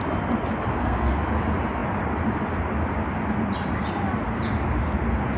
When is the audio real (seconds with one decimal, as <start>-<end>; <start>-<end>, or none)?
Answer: 0.0-0.7; 1.2-5.4